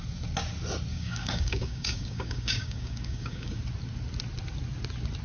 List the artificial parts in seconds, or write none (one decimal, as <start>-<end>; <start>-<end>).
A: 0.9-3.6